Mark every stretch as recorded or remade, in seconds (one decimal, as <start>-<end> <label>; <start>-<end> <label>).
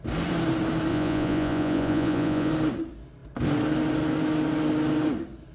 0.0-0.9 recorded; 0.9-2.5 remade; 2.5-5.5 recorded